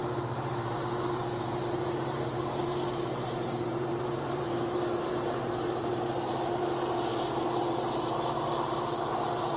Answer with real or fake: fake